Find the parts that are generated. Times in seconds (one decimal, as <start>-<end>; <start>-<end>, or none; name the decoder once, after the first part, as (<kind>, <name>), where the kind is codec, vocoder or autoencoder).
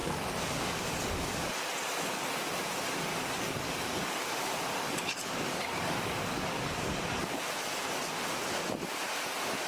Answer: 0.0-1.5 (codec, DAC); 3.1-7.4